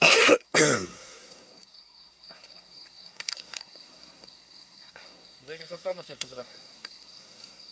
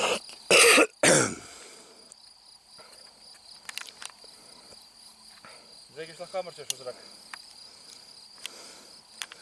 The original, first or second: second